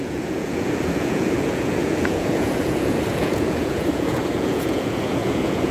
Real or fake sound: fake